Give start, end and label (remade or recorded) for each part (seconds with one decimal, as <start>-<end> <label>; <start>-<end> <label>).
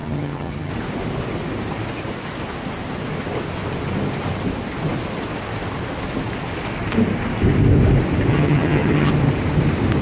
0.0-0.7 remade; 0.7-8.3 recorded; 8.3-9.1 remade; 9.1-10.0 recorded